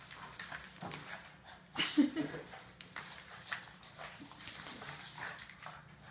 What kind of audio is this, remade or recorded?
recorded